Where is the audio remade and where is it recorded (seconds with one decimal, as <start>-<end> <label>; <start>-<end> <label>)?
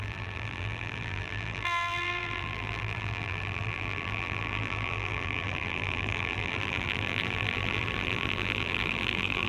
0.0-9.5 remade